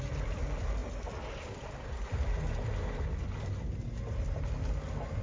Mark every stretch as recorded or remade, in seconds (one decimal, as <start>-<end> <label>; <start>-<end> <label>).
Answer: 0.0-5.2 recorded